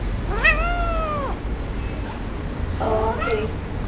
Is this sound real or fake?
real